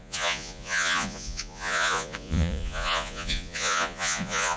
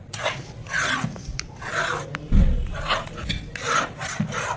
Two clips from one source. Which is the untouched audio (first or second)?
second